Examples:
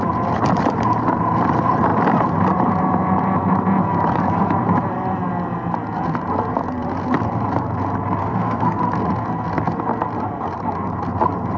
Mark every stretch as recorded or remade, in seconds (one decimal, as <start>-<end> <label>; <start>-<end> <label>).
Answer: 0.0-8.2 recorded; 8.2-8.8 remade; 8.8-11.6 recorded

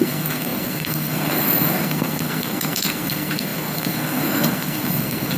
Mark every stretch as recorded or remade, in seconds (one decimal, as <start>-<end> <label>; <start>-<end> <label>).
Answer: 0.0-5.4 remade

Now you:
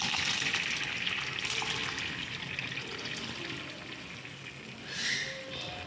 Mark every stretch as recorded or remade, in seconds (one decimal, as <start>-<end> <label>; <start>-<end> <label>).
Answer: 0.0-5.9 recorded

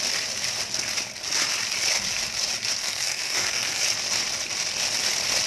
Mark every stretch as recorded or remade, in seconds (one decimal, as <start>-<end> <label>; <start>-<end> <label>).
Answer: 0.0-2.8 recorded; 2.8-3.8 remade; 3.8-5.5 recorded

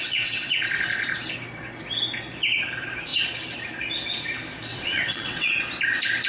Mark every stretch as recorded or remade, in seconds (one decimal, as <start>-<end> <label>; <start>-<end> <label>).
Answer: 0.0-0.5 remade; 0.5-4.7 recorded; 4.7-5.5 remade; 5.5-6.3 recorded

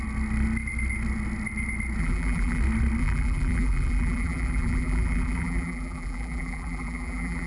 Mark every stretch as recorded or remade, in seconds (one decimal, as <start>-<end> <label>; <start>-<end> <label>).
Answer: 0.0-2.0 recorded; 2.0-2.6 remade; 2.6-3.0 recorded; 3.0-7.5 remade

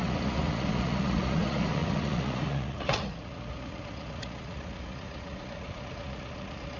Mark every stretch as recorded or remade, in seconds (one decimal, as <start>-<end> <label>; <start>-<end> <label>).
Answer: 0.0-6.8 remade

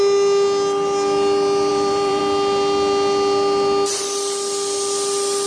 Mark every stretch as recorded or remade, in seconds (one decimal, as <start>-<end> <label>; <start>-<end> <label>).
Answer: 0.0-1.7 recorded; 1.7-2.2 remade; 2.2-5.5 recorded